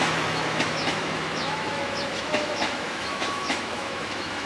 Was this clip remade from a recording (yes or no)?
yes